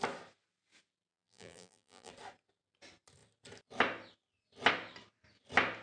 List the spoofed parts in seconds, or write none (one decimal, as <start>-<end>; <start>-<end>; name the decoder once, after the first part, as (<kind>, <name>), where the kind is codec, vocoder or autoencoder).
1.1-2.1 (vocoder, BigVGAN v2)